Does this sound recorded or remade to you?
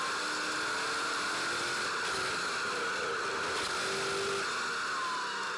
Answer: recorded